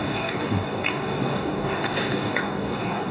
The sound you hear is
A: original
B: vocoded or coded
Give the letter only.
B